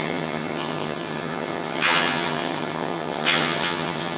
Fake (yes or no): yes